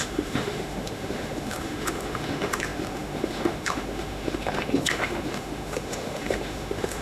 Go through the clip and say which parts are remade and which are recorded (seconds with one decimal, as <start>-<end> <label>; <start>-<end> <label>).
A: 0.0-7.0 remade